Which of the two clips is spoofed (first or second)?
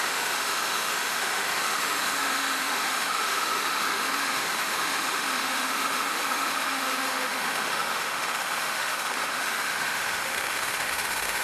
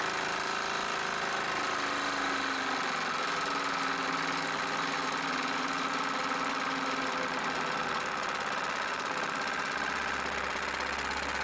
first